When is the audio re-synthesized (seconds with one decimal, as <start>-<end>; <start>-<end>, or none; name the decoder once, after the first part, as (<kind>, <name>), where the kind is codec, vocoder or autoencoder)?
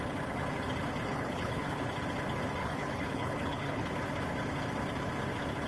1.0-1.8 (codec, HILCodec); 2.6-3.9